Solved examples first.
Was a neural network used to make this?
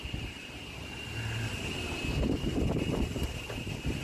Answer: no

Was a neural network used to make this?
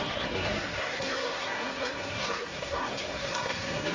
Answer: yes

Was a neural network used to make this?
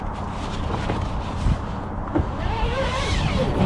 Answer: yes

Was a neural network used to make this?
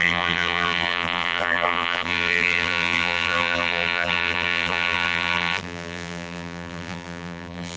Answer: yes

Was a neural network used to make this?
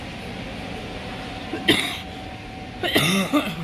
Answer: no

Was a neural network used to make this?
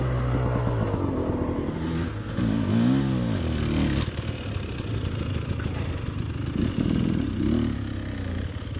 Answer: no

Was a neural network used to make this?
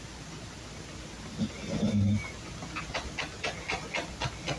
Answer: no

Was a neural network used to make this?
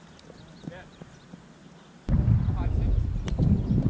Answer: no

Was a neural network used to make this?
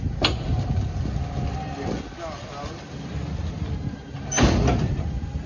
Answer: no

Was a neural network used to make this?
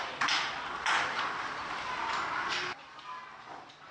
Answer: no